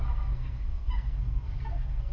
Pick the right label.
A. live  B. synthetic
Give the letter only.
B